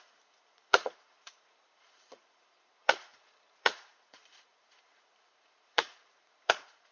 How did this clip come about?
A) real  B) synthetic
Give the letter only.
B